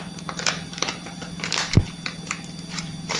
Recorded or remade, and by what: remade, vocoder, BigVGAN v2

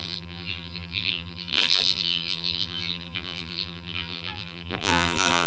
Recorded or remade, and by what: remade, vocoder, BigVGAN v2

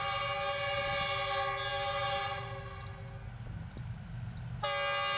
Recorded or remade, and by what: recorded